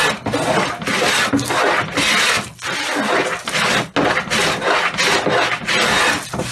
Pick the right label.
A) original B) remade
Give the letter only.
A